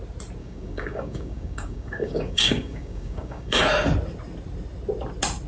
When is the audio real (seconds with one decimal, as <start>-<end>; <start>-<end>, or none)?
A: 0.0-0.4; 3.6-5.5